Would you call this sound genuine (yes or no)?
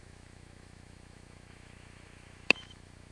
no